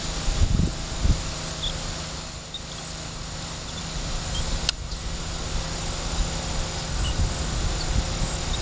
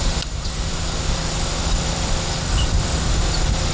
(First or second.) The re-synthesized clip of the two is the second